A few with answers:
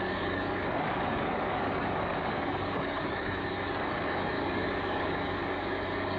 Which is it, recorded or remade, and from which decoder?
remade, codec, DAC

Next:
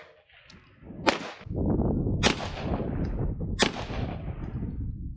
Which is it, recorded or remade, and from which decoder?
recorded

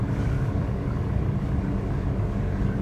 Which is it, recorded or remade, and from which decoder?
remade, codec, DAC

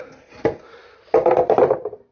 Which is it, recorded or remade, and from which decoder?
recorded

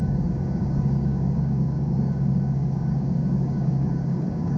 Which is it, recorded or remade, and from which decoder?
remade, codec, DAC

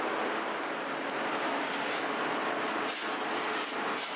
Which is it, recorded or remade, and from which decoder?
recorded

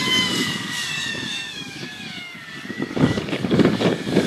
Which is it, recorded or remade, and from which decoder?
remade, codec, DAC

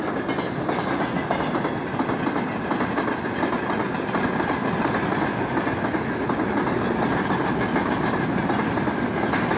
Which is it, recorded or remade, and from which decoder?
recorded